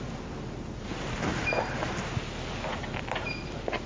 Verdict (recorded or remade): recorded